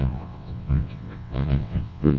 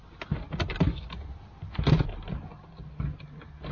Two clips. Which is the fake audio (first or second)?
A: first